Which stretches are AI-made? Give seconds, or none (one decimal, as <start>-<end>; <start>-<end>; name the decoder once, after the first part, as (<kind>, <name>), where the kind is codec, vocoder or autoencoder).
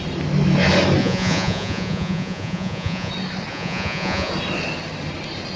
1.0-3.1 (vocoder, Vocos); 3.5-4.3